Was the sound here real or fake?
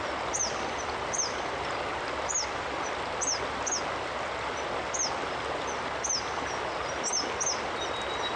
real